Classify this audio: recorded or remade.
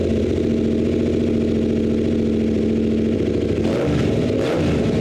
recorded